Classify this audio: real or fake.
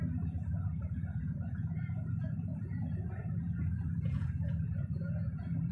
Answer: fake